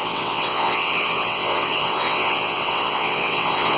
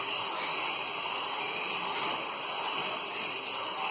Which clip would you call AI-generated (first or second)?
first